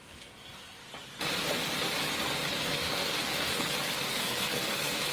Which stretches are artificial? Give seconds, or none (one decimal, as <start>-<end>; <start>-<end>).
0.0-0.8; 2.6-3.5; 4.1-5.1

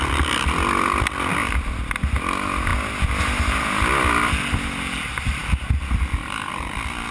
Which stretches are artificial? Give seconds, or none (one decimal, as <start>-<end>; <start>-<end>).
none

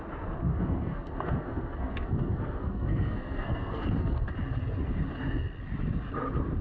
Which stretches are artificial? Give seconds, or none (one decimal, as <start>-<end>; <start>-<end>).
0.5-4.3

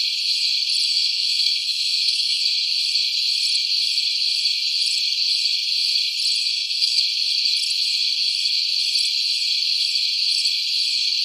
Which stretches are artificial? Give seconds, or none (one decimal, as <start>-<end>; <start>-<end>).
0.9-2.4; 6.4-7.0

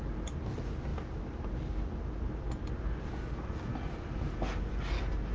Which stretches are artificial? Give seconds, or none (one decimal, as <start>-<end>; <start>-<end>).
none

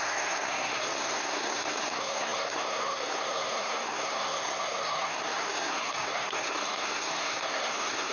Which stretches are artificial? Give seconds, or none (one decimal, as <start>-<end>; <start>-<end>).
0.0-8.1

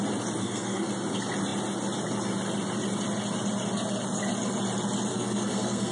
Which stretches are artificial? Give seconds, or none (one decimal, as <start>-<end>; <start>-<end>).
0.4-0.9; 5.1-5.9